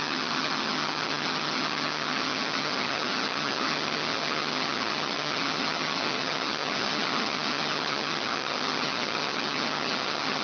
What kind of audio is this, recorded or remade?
remade